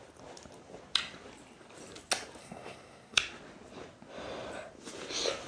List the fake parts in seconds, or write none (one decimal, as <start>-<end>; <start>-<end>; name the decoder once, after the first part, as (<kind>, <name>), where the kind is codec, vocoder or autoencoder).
2.4-3.2 (codec, SNAC)